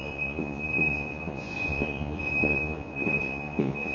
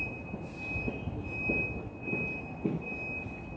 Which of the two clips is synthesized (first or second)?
first